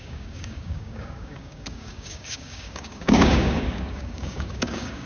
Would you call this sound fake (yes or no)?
yes